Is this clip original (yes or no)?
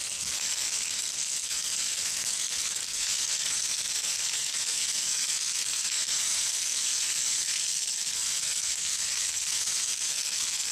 no